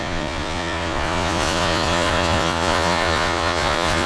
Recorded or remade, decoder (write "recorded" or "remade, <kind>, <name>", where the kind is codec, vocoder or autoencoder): remade, vocoder, Vocos